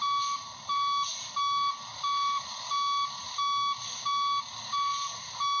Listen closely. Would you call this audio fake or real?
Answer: real